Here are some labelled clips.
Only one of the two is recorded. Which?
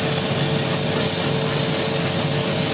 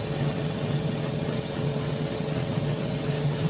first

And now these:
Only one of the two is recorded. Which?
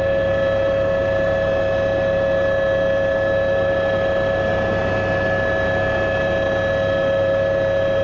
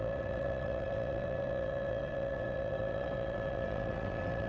first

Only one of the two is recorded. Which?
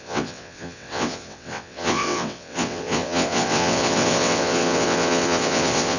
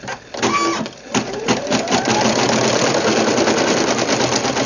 second